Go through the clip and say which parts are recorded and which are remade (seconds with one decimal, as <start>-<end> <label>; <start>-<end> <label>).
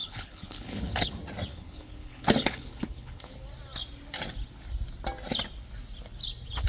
0.0-1.1 remade; 1.1-1.5 recorded; 1.5-3.3 remade; 3.3-6.7 recorded